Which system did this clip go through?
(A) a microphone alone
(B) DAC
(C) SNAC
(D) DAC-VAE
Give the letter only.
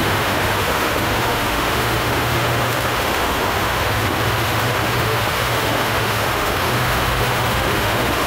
D